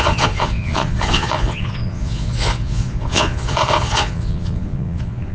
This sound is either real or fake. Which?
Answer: fake